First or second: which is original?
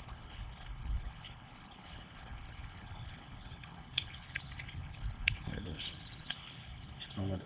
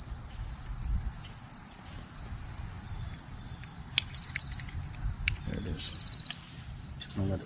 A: second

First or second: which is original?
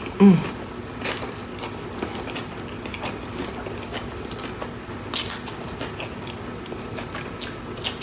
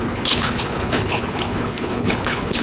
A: first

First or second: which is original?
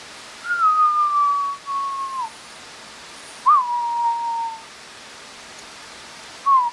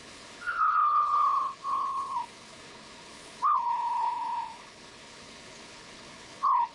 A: first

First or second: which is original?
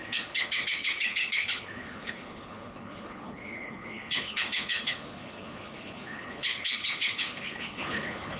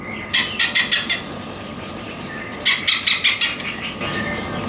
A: second